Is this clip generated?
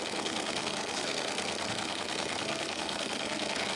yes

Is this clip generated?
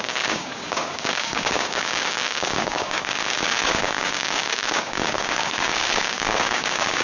yes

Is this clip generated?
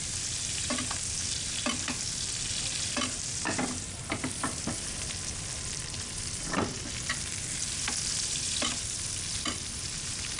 yes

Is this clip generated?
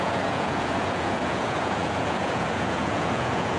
yes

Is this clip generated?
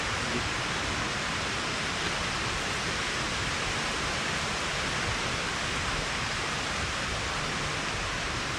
no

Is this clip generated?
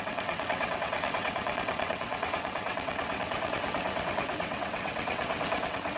yes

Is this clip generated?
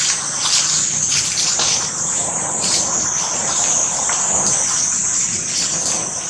no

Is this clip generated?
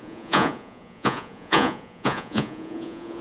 yes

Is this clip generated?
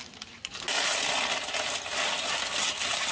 no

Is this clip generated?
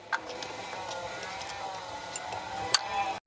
no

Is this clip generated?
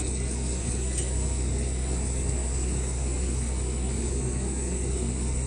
yes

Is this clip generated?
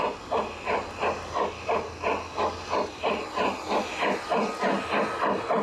no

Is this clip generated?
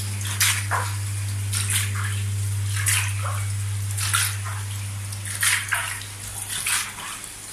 no